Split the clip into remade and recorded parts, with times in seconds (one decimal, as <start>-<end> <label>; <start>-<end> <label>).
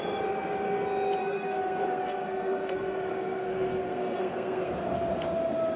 0.0-1.2 recorded; 1.2-4.7 remade; 4.7-5.8 recorded